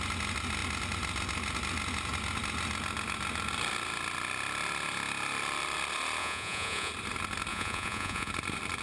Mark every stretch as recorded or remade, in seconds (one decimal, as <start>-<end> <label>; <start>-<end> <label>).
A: 0.0-6.2 recorded; 6.2-6.9 remade; 6.9-7.5 recorded; 7.5-8.3 remade; 8.3-8.8 recorded